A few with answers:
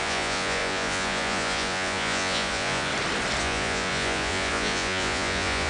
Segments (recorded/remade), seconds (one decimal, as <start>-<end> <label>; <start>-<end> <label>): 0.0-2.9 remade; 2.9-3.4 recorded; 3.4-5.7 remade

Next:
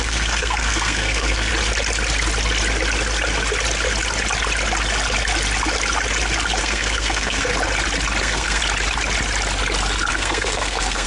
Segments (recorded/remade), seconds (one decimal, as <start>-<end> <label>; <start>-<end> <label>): 0.0-1.5 remade; 1.5-6.6 recorded; 6.6-7.5 remade; 7.5-8.2 recorded; 8.2-8.6 remade; 8.6-10.1 recorded; 10.1-11.1 remade

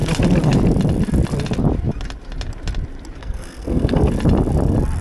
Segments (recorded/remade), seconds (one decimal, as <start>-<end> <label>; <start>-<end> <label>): 0.0-3.2 recorded; 3.2-4.1 remade; 4.1-5.0 recorded

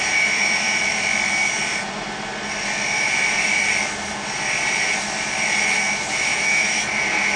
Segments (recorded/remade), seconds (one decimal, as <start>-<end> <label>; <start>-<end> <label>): 0.0-6.3 recorded; 6.3-6.8 remade; 6.8-7.4 recorded

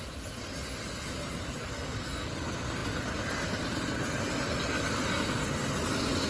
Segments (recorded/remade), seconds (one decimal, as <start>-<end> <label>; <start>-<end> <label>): 0.0-1.6 recorded; 1.6-2.3 remade; 2.3-6.3 recorded

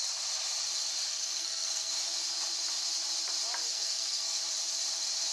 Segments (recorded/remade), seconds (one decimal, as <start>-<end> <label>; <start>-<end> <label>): 0.0-1.1 recorded; 1.1-1.9 remade; 1.9-3.6 recorded; 3.6-4.4 remade; 4.4-5.3 recorded